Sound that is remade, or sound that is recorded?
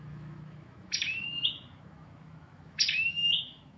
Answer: remade